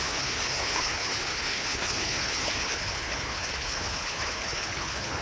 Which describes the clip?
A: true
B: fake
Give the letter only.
B